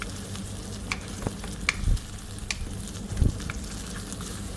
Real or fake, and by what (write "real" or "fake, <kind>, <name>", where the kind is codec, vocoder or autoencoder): real